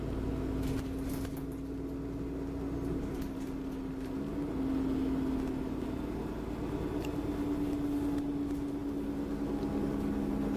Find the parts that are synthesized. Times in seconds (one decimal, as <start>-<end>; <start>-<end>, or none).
none